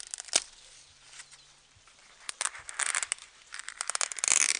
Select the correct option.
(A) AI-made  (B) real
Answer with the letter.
B